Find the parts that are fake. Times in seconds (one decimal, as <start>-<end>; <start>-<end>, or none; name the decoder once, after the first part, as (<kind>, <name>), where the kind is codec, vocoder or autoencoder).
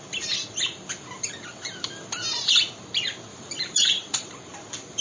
3.3-4.3 (vocoder, BigVGAN v2)